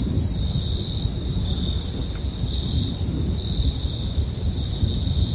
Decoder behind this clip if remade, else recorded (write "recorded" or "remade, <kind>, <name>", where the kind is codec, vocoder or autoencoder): recorded